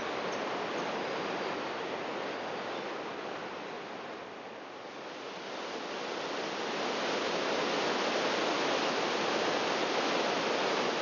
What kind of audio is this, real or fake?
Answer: real